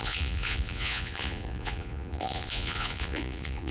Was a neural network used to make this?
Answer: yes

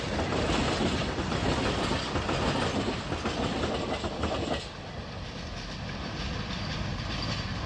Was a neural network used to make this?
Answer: no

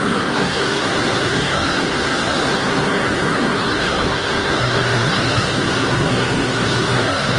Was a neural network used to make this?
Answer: yes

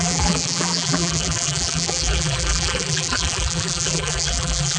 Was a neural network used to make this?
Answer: yes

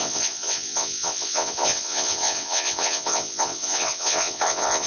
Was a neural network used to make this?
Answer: yes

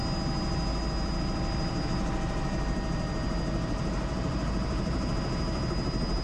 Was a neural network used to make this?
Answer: no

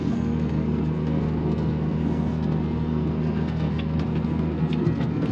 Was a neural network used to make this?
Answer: yes